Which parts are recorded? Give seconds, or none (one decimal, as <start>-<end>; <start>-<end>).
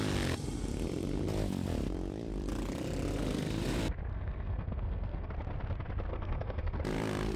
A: 0.0-4.1; 5.3-6.1; 6.8-7.4